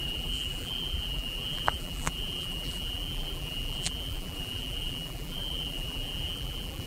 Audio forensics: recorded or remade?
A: remade